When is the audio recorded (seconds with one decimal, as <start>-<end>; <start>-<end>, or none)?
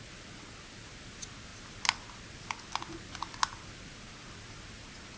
0.0-5.2